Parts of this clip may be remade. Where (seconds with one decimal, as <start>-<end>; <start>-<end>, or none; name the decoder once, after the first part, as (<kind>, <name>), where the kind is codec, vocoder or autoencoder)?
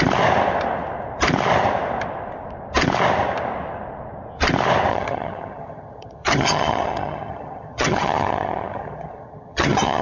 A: 4.9-10.0 (vocoder, HiFi-GAN)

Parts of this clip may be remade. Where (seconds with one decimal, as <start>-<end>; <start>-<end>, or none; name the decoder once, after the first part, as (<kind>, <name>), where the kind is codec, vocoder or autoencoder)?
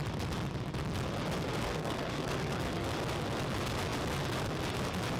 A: 1.5-2.9 (codec, SNAC)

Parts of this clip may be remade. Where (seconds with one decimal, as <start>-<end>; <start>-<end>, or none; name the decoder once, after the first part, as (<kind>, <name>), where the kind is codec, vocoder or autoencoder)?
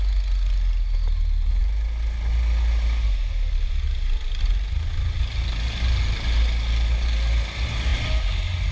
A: none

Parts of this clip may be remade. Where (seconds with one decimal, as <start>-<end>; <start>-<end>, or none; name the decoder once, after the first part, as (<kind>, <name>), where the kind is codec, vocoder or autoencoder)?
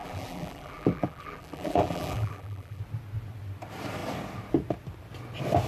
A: 0.0-2.8 (vocoder, BigVGAN v2)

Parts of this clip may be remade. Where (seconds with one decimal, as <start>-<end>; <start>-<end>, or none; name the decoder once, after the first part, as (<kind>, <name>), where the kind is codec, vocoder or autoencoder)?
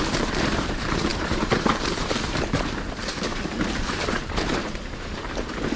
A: 0.0-5.8 (vocoder, BigVGAN v2)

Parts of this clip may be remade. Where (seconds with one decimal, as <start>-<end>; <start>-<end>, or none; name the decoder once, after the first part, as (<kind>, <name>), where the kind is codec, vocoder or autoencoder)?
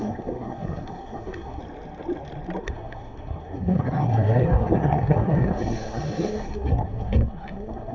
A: 0.0-1.6 (codec, SNAC); 2.6-7.9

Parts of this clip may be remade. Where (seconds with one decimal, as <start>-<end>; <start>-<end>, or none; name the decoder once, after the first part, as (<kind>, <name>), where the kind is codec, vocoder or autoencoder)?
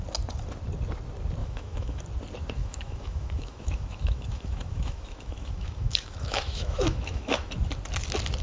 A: 1.4-2.0 (autoencoder, DAC-VAE); 2.6-7.5